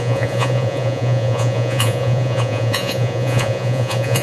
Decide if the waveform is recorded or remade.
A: remade